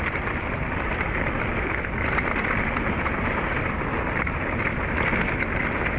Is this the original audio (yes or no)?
yes